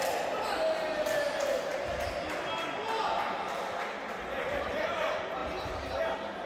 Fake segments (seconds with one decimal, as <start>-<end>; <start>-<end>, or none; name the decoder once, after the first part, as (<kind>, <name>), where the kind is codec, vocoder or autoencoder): none